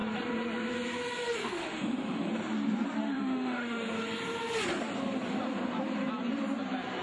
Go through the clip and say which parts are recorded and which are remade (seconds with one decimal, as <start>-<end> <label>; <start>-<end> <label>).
0.0-1.4 recorded; 1.4-2.3 remade; 2.3-3.0 recorded; 3.0-3.9 remade; 3.9-7.0 recorded